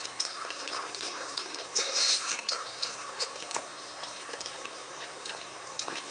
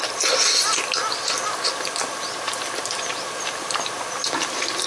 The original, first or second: second